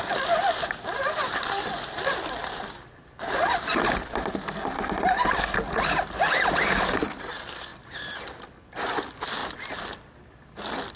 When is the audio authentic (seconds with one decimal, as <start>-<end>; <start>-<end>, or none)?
0.0-11.0